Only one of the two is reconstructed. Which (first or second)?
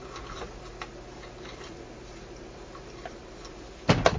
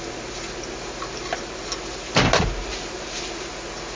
first